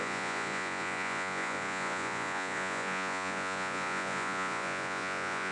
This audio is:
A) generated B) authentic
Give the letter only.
A